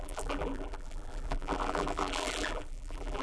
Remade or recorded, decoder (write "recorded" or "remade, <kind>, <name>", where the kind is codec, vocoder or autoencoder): remade, vocoder, BigVGAN v2